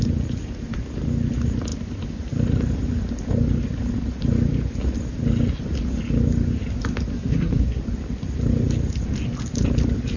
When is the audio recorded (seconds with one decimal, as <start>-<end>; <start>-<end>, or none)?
0.0-7.1; 7.8-10.2